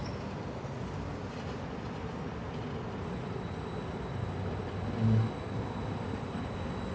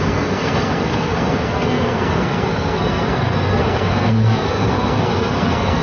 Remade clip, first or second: second